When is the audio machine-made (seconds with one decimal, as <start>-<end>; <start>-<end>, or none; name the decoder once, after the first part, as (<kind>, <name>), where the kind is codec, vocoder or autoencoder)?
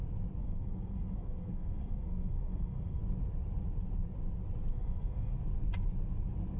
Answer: 0.4-3.0 (codec, SNAC); 4.7-5.3